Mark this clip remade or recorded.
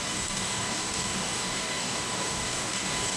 remade